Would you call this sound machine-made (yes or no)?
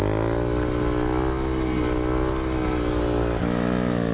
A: no